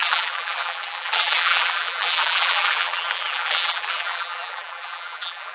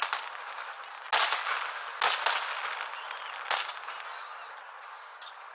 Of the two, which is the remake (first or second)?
first